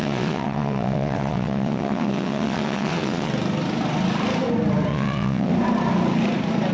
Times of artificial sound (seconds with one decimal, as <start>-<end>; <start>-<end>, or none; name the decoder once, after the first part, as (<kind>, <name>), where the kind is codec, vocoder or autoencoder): 0.0-3.3 (vocoder, WaveNeXt); 4.9-5.5